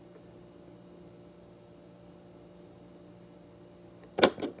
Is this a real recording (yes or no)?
yes